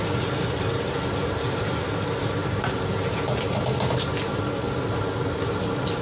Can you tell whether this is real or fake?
real